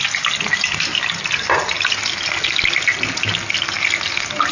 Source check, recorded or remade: recorded